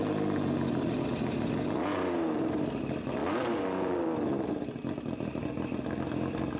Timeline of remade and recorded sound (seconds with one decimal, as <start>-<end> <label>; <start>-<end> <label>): 0.0-6.6 recorded